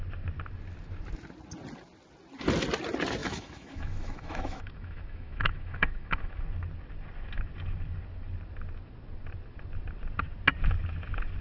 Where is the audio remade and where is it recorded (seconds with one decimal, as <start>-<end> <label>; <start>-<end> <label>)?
0.0-3.2 recorded; 3.2-6.4 remade; 6.4-11.4 recorded